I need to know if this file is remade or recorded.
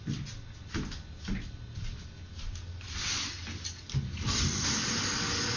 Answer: recorded